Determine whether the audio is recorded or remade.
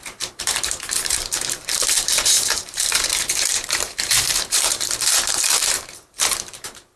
remade